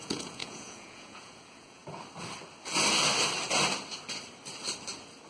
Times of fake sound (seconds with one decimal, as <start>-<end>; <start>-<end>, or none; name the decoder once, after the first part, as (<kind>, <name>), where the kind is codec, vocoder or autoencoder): 0.0-1.8 (vocoder, Vocos)

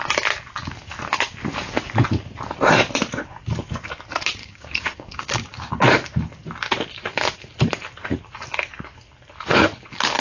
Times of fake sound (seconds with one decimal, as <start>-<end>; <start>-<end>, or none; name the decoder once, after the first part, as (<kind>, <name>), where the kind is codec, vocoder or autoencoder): 4.4-5.8 (codec, DAC)

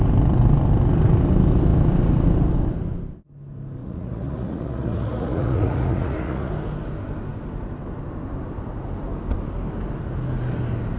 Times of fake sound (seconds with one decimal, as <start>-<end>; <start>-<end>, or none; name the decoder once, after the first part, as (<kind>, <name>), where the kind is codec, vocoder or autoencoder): 3.8-6.5 (vocoder, Vocos)

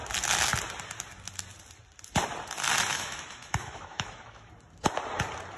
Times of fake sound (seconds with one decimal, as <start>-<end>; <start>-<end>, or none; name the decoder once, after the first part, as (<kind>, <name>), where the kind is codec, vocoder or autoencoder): 2.9-4.5 (autoencoder, DAC-VAE)

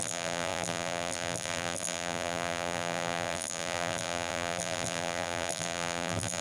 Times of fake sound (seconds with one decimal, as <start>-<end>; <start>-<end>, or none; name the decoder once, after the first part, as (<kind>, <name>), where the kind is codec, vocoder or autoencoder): 0.0-6.4 (vocoder, BigVGAN v2)

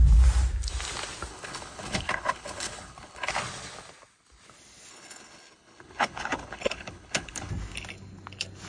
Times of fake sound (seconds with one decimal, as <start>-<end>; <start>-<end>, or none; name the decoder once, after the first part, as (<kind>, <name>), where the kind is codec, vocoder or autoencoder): 1.3-3.3 (codec, HILCodec); 4.9-7.5

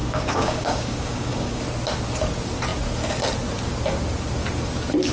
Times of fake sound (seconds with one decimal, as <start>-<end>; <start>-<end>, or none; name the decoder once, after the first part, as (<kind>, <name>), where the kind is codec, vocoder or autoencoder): 0.0-1.6 (codec, DAC)

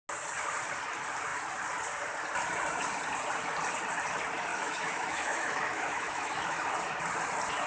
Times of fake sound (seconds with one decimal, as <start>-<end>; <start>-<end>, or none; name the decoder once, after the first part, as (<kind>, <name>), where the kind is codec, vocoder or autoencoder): 4.5-6.7 (autoencoder, DAC-VAE)